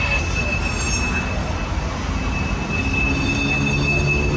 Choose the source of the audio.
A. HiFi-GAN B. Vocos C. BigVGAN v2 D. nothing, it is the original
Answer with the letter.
D